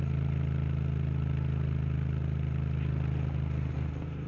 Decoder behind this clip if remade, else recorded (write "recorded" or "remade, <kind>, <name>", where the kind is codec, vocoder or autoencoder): recorded